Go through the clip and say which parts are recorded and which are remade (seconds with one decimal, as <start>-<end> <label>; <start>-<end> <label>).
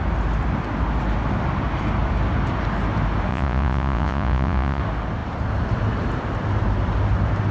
0.0-3.3 recorded; 3.3-4.8 remade; 4.8-7.5 recorded